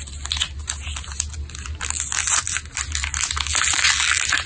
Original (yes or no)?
yes